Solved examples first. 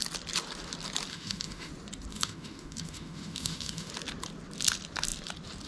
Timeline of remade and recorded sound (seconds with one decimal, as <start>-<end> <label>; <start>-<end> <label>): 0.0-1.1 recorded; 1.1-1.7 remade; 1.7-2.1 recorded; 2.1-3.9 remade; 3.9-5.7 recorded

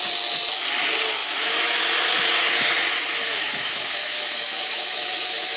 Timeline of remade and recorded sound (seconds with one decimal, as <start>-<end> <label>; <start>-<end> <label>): 0.0-1.2 recorded; 1.2-1.8 remade; 1.8-3.3 recorded; 3.3-5.6 remade

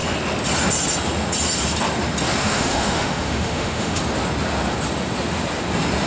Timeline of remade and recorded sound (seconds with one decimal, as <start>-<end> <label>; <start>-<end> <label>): 0.0-2.4 recorded; 2.4-4.0 remade; 4.0-6.1 recorded

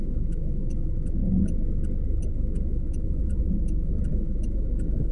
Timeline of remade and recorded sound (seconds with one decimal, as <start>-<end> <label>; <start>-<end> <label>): 0.0-1.2 remade; 1.2-2.3 recorded; 2.3-5.1 remade

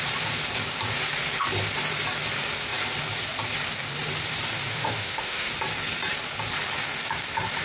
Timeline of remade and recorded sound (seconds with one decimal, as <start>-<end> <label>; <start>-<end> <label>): 0.0-4.7 recorded; 4.7-5.5 remade; 5.5-7.6 recorded